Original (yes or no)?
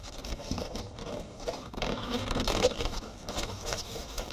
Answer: no